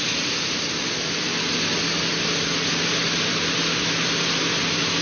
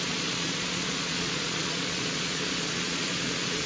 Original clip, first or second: first